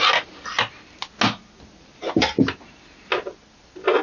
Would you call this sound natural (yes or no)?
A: yes